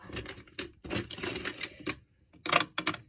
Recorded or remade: recorded